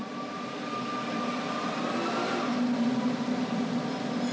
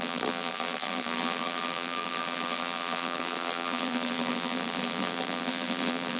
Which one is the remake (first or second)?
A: second